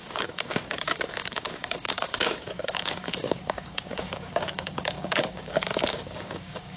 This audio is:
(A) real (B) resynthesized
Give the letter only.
B